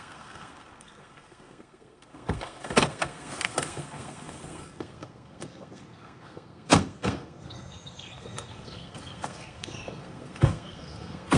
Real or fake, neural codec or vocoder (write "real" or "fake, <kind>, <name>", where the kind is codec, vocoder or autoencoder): fake, codec, SNAC